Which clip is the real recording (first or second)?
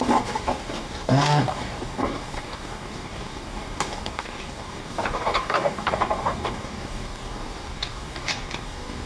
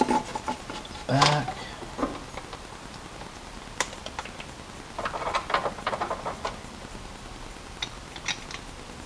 second